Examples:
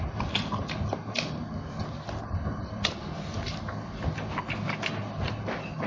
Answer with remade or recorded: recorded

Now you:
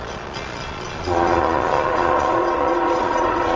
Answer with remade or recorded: remade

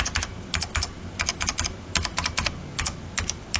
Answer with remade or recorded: recorded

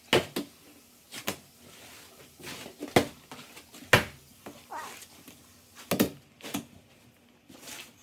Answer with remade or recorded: recorded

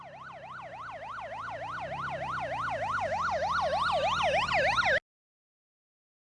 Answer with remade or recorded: recorded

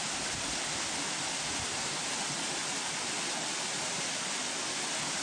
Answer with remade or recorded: recorded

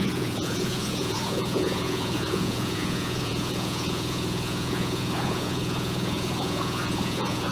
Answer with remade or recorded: remade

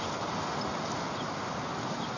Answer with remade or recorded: recorded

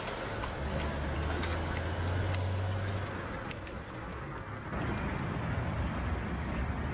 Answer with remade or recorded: recorded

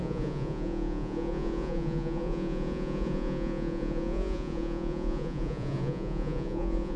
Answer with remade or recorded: remade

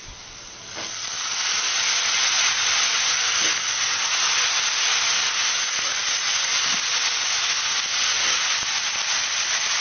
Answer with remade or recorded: recorded